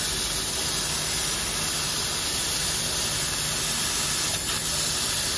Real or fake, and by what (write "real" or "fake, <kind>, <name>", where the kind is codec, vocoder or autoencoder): real